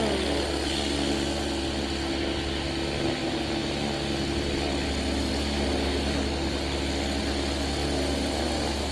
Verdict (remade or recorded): recorded